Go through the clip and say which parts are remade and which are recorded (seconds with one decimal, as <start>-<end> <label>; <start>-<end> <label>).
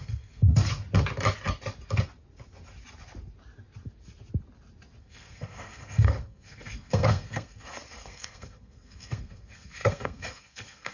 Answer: 0.0-0.5 remade; 0.5-5.0 recorded; 5.0-10.9 remade